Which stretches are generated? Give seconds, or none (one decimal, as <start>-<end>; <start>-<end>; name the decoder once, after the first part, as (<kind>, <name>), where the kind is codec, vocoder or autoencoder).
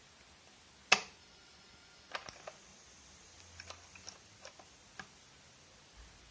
1.2-2.1 (vocoder, Vocos)